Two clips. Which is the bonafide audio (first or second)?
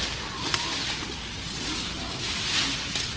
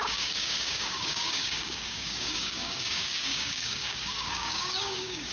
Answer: first